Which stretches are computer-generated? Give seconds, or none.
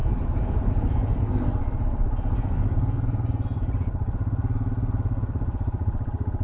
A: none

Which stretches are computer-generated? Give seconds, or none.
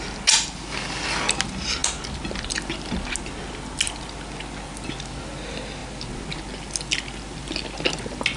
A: none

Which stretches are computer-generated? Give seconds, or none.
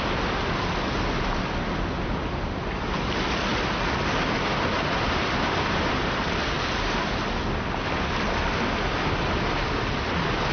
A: none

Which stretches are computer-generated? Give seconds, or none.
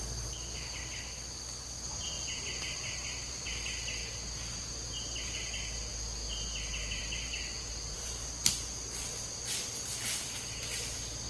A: 0.0-4.0; 5.0-5.9; 7.0-11.3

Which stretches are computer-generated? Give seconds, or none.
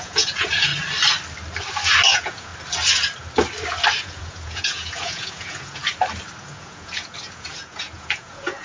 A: 0.0-0.7; 2.1-2.5; 4.0-5.8; 6.4-8.6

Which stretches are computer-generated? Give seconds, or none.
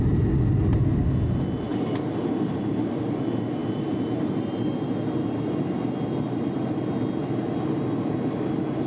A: none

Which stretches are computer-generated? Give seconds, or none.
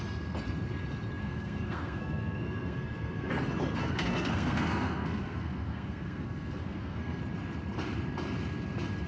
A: 1.2-3.3; 3.8-7.2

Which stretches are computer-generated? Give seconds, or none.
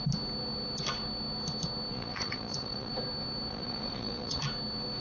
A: 1.9-2.9; 3.5-4.4